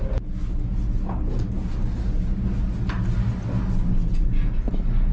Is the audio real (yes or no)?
yes